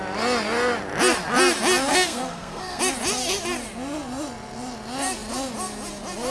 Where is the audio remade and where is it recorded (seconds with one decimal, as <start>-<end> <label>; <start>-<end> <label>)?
0.0-1.9 recorded; 1.9-2.8 remade; 2.8-6.3 recorded